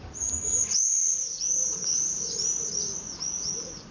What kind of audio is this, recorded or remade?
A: remade